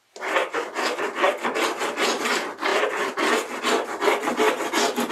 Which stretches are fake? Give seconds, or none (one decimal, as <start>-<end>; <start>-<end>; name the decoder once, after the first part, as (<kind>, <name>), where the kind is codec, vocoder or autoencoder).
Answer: none